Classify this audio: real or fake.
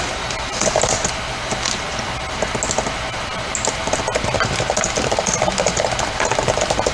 real